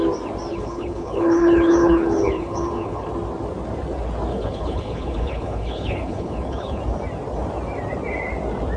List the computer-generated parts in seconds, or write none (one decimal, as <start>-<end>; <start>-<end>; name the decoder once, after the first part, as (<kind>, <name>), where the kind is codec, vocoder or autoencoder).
0.5-3.1 (codec, HILCodec); 4.3-6.8